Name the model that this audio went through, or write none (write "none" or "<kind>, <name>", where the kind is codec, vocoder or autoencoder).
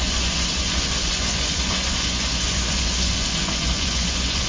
vocoder, Vocos